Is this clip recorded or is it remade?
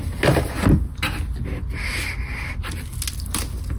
recorded